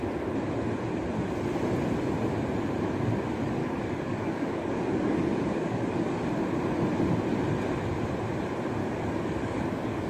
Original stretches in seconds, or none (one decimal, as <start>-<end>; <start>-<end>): 0.0-3.6; 6.3-8.8